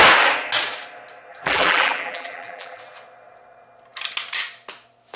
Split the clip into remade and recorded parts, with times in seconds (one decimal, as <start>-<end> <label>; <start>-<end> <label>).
0.0-1.3 recorded; 1.3-2.8 remade; 2.8-5.2 recorded